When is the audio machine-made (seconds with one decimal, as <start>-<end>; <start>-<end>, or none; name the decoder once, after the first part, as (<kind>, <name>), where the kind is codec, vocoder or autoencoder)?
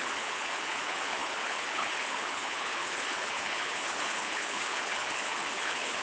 0.0-6.0 (codec, HILCodec)